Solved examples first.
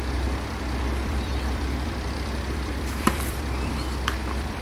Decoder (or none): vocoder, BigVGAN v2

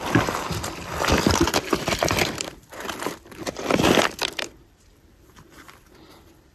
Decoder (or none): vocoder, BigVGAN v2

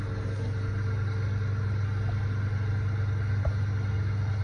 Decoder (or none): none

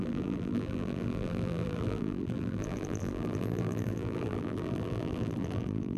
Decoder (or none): vocoder, BigVGAN v2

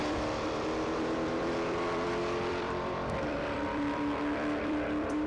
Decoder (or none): vocoder, BigVGAN v2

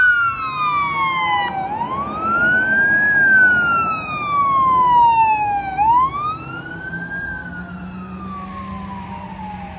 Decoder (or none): none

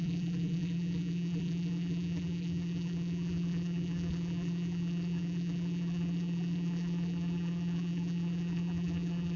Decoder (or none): vocoder, BigVGAN v2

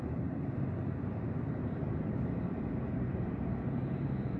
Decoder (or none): vocoder, BigVGAN v2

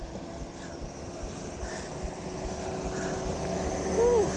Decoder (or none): none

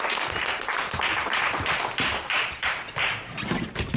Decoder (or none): vocoder, BigVGAN v2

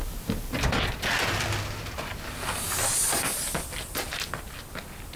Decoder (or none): none